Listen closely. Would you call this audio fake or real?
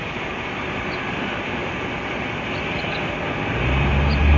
real